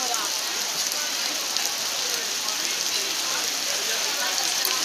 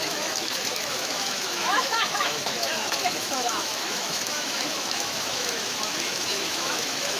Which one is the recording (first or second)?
first